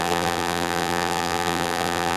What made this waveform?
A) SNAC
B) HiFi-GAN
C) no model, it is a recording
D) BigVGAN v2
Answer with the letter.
D